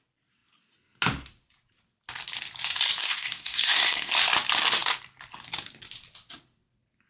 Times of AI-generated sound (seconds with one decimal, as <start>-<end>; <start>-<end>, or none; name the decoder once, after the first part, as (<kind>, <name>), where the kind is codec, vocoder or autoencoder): 3.0-4.1 (codec, SNAC)